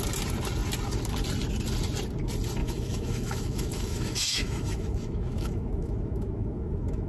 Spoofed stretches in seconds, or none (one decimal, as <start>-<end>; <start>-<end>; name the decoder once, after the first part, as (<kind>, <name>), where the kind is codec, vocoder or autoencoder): 2.6-7.1 (autoencoder, DAC-VAE)